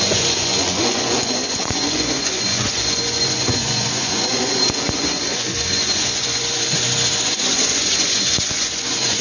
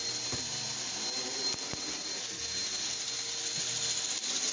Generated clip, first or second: first